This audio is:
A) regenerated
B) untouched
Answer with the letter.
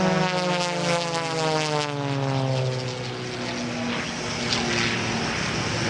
B